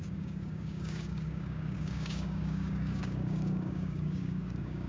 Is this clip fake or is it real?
fake